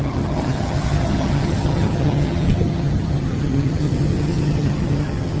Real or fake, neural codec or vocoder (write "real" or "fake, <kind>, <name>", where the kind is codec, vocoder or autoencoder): fake, vocoder, HiFi-GAN